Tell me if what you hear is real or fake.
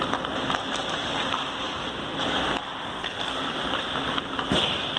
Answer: real